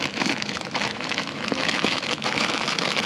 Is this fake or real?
fake